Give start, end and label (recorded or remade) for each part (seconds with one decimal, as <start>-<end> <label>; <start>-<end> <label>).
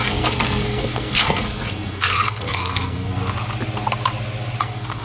0.0-3.2 remade; 3.2-4.6 recorded; 4.6-5.0 remade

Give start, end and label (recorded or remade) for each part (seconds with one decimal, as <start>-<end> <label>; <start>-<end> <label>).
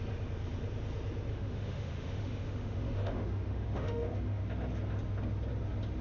0.0-1.3 recorded; 1.3-4.4 remade; 4.4-6.0 recorded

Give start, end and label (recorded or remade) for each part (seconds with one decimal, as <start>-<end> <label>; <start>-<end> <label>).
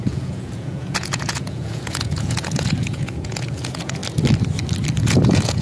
0.0-4.0 remade; 4.0-5.0 recorded; 5.0-5.6 remade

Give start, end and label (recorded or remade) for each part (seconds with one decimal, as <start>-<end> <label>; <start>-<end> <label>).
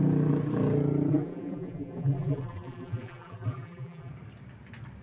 0.0-1.1 recorded; 1.1-4.1 remade; 4.1-5.0 recorded